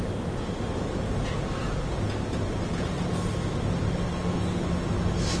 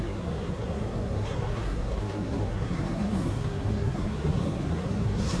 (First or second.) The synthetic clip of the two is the second